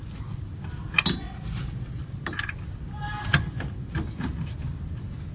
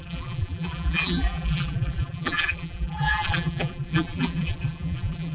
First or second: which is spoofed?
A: second